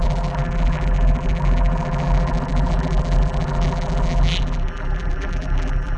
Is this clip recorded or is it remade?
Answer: remade